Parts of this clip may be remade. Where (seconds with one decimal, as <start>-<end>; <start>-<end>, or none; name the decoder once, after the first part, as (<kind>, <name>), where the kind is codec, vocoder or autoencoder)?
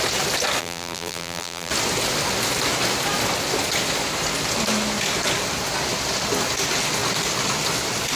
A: 0.6-1.7 (vocoder, BigVGAN v2)